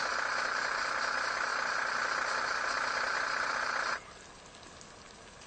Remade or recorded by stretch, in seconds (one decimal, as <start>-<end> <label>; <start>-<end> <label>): 0.0-5.5 recorded